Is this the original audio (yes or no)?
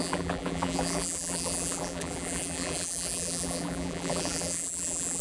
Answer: no